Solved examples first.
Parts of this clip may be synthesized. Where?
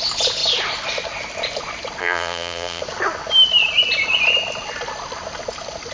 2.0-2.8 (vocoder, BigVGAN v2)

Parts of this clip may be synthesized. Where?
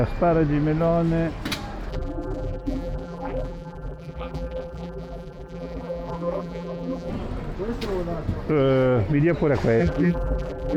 1.9-7.1 (vocoder, BigVGAN v2); 9.8-10.8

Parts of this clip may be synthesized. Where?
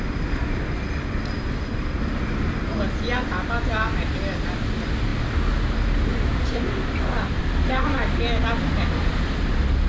6.1-7.4 (vocoder, BigVGAN v2)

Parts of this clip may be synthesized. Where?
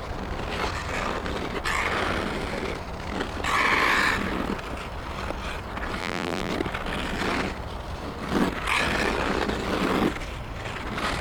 6.0-6.5 (vocoder, BigVGAN v2)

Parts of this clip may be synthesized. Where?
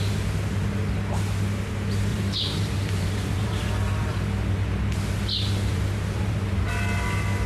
2.1-6.6 (vocoder, BigVGAN v2)